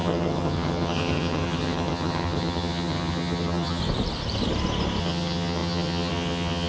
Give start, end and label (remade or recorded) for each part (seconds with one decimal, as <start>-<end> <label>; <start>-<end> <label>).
0.0-3.8 remade; 3.8-5.0 recorded; 5.0-6.7 remade